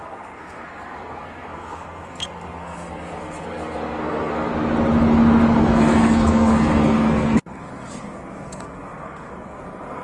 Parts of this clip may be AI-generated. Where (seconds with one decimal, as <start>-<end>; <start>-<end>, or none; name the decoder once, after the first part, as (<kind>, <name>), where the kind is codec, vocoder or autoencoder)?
0.0-4.5 (codec, SNAC); 5.6-10.0